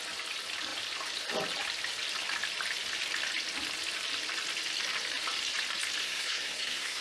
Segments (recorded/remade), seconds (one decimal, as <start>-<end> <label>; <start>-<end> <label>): 0.0-6.0 recorded; 6.0-7.0 remade